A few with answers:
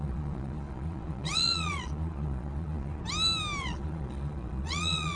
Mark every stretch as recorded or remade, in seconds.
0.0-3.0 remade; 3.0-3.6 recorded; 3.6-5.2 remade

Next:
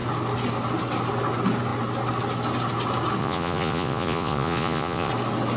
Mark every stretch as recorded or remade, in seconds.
0.0-3.2 recorded; 3.2-5.1 remade; 5.1-5.6 recorded

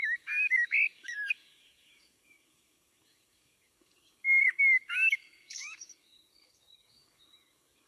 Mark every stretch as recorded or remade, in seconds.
0.0-7.9 remade

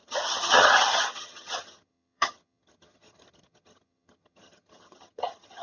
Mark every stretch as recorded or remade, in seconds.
0.0-5.6 remade

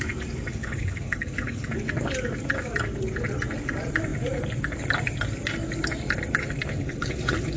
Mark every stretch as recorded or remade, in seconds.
0.0-0.5 recorded; 0.5-1.7 remade; 1.7-6.7 recorded; 6.7-7.6 remade